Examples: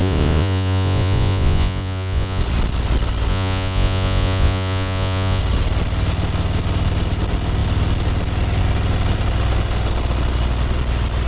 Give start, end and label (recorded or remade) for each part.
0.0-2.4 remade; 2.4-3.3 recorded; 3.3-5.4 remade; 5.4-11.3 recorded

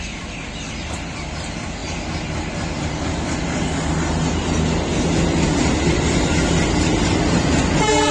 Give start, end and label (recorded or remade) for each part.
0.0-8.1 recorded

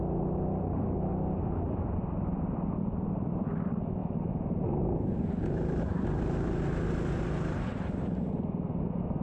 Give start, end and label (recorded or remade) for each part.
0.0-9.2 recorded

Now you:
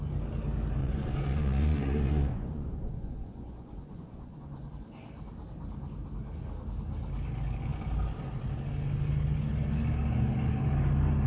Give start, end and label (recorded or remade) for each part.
0.0-0.8 recorded; 0.8-4.7 remade; 4.7-11.3 recorded

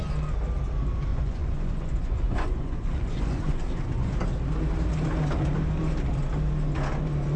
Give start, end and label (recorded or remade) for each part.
0.0-1.1 recorded; 1.1-4.1 remade; 4.1-7.4 recorded